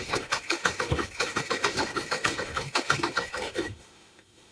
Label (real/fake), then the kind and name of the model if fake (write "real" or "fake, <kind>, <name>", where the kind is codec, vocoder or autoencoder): fake, autoencoder, DAC-VAE